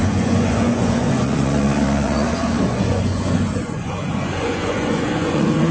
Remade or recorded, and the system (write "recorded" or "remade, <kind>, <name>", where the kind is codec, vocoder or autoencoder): remade, vocoder, Vocos